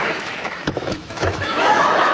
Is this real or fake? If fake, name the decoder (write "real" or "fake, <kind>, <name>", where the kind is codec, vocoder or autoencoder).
fake, autoencoder, DAC-VAE